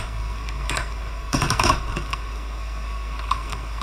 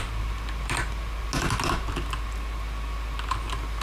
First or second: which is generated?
first